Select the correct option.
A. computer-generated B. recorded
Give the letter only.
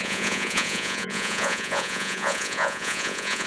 A